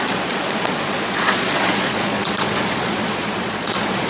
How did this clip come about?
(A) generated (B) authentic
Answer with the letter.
A